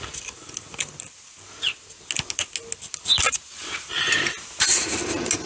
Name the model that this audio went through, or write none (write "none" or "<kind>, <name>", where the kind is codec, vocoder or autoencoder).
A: none